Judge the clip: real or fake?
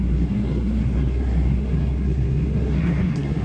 fake